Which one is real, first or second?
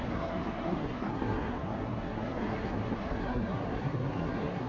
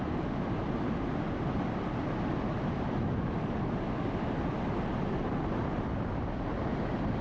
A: second